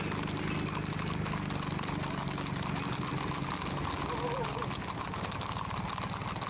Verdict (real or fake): real